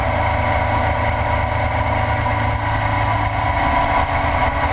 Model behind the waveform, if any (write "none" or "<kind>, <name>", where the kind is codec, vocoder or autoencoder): none